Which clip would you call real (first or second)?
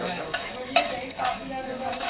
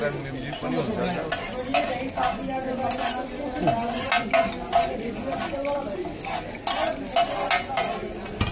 second